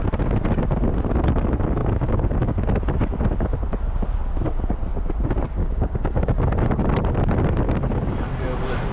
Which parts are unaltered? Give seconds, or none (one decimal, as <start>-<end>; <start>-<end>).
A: 0.0-1.8; 2.6-5.6; 6.4-8.9